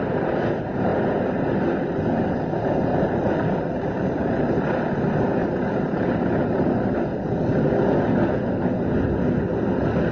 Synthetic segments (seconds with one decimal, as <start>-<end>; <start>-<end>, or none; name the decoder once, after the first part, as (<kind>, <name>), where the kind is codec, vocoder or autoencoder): 2.9-4.6 (vocoder, BigVGAN v2); 5.4-6.3